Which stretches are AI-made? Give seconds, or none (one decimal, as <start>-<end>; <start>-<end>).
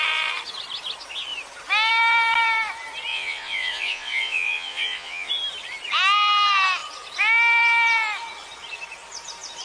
3.1-5.3